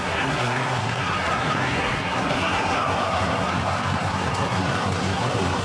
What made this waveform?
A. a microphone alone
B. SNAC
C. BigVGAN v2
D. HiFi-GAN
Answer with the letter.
B